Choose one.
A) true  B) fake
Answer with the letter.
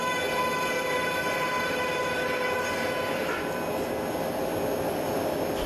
A